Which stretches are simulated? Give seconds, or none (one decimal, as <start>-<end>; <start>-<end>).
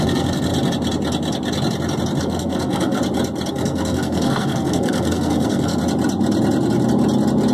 0.0-0.5; 2.2-3.0; 3.5-5.8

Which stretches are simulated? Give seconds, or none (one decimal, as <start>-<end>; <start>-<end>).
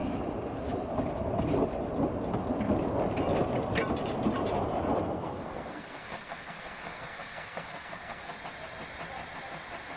5.0-8.3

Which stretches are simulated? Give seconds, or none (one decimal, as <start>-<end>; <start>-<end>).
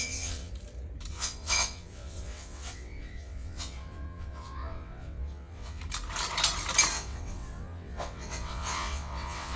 0.0-0.5; 1.1-5.8; 6.9-9.6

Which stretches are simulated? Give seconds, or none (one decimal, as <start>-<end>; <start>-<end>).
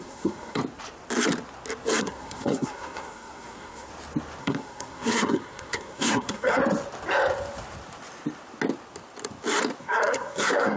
0.0-0.6; 2.0-3.9; 4.4-6.6; 9.8-10.8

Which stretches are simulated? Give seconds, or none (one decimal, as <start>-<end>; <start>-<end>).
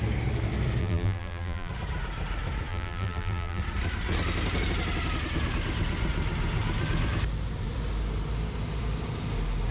0.8-1.7; 2.7-3.6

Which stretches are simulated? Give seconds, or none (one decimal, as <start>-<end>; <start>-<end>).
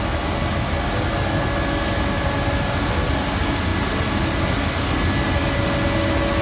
none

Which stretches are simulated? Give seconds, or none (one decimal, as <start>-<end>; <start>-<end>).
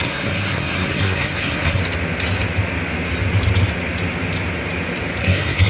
0.0-1.8; 5.2-5.7